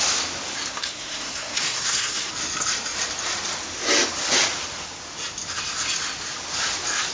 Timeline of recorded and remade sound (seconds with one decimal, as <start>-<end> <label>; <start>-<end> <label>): 0.0-0.7 recorded; 0.7-2.3 remade; 2.3-7.1 recorded